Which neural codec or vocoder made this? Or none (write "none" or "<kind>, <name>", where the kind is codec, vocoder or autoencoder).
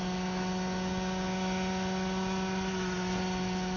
none